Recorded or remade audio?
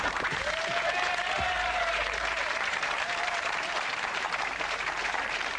remade